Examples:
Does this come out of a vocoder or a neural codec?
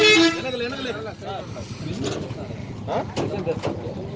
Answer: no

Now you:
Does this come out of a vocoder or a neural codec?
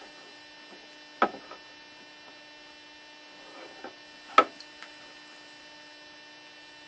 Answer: no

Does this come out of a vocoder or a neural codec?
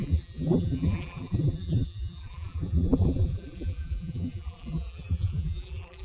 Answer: yes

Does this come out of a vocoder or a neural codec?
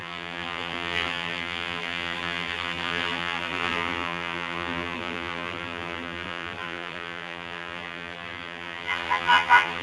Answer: yes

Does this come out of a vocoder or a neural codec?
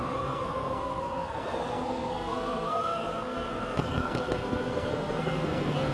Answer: yes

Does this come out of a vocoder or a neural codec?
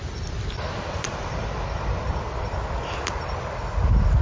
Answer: no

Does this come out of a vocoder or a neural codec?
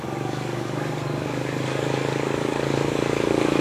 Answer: yes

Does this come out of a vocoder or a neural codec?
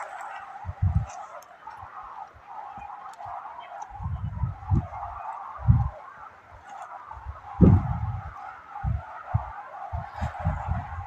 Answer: no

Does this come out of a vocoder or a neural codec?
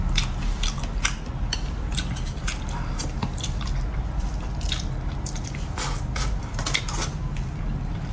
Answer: no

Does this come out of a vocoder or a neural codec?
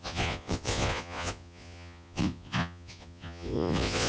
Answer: yes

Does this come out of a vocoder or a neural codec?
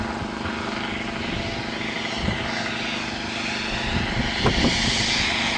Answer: no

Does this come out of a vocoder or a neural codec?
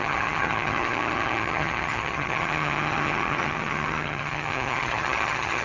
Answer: yes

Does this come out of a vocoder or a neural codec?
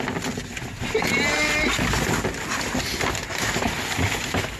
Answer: no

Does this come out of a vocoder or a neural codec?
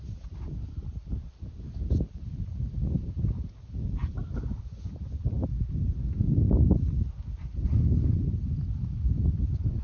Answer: no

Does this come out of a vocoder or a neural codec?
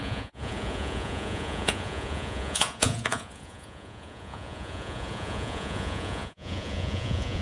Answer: yes